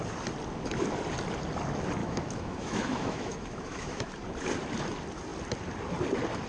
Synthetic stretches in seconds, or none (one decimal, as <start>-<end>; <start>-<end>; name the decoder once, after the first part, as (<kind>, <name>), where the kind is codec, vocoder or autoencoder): 2.0-4.2 (autoencoder, DAC-VAE)